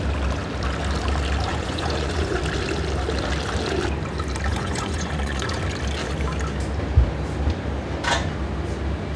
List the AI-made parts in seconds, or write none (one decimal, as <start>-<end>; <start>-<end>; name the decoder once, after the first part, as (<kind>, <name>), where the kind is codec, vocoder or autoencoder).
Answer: 1.5-2.4 (vocoder, Vocos); 4.5-5.6